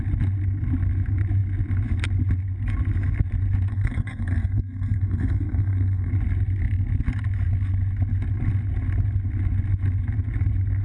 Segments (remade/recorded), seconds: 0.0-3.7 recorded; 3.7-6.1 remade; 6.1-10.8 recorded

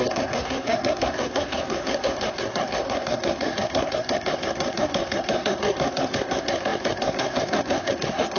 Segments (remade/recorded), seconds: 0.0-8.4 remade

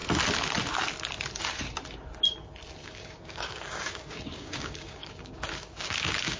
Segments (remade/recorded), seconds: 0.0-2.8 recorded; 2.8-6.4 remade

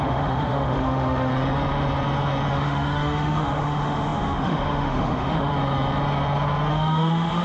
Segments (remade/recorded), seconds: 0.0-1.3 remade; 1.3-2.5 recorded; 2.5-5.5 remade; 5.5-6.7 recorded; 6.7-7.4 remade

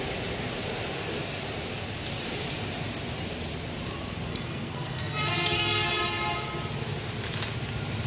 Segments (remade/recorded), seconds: 0.0-4.3 recorded; 4.3-5.9 remade; 5.9-8.1 recorded

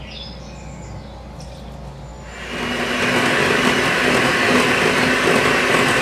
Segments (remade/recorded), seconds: 0.0-6.0 recorded

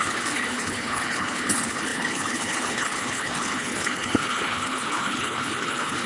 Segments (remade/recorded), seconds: 0.0-6.1 remade

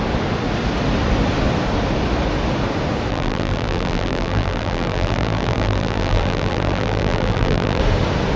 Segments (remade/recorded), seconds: 0.0-3.1 recorded; 3.1-7.8 remade; 7.8-8.4 recorded